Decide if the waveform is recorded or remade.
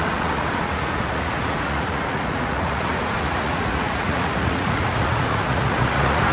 remade